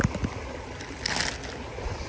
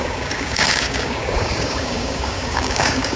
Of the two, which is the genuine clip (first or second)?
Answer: first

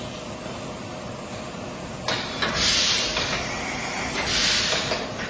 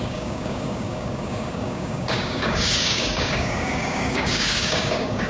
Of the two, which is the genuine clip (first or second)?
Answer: first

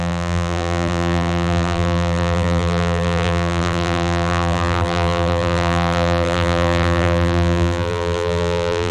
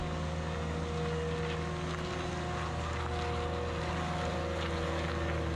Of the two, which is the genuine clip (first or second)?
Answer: second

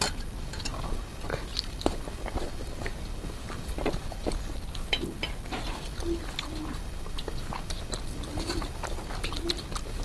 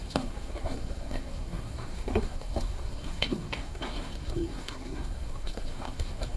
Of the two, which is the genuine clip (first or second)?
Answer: first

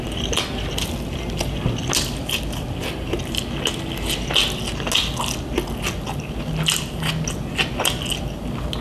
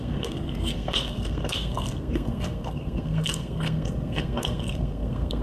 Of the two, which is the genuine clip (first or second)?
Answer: first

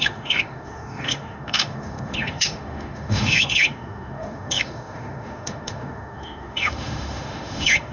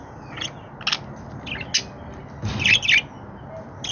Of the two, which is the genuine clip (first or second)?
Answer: second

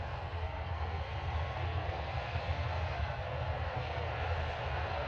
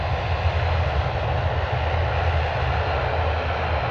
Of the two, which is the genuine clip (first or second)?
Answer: second